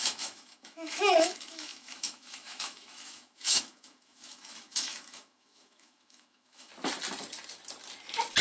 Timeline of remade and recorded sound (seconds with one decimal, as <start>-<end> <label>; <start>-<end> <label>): 0.0-6.7 remade; 6.7-8.4 recorded